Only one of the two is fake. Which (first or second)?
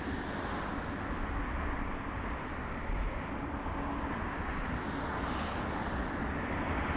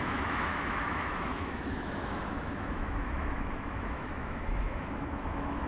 second